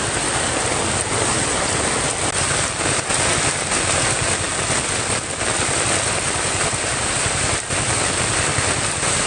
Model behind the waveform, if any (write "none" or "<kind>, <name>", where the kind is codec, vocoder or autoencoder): none